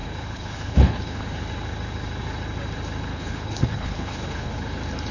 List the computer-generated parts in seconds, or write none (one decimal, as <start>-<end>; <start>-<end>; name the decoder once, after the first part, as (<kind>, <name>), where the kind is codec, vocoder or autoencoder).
0.0-1.2 (codec, HILCodec); 3.1-4.5